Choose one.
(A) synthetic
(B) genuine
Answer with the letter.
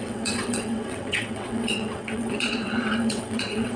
A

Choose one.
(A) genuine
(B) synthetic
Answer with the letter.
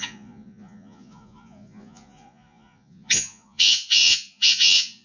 B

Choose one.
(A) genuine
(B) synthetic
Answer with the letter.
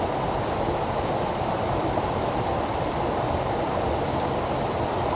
A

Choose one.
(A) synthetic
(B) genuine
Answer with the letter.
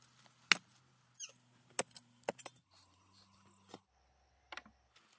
B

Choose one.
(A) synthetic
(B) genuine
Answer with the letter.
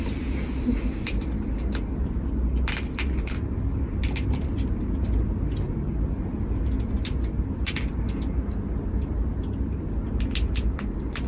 B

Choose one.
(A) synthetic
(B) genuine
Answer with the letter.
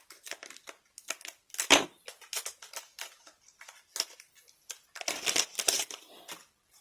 B